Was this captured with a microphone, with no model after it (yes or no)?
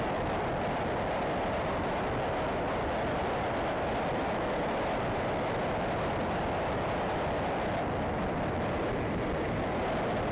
yes